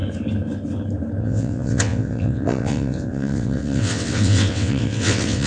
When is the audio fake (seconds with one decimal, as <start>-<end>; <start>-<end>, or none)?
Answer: 1.2-5.5